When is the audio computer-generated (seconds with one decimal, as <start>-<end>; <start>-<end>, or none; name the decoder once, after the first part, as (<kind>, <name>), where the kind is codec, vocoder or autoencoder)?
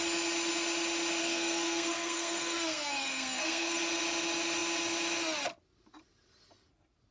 1.2-3.8 (codec, SNAC)